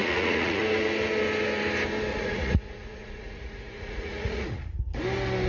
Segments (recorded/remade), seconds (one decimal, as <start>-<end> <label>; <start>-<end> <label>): 0.0-0.6 remade; 0.6-2.1 recorded; 2.1-4.6 remade; 4.6-5.5 recorded